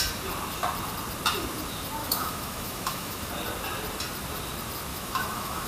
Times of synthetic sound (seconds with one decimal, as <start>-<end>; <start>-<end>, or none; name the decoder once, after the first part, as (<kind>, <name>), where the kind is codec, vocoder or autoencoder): 2.0-3.3 (autoencoder, DAC-VAE); 4.9-5.7